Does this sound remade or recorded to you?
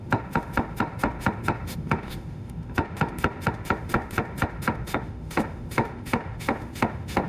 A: remade